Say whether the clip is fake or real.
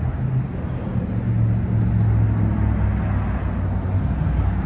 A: real